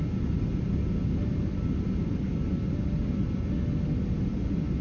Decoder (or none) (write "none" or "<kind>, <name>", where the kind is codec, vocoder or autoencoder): none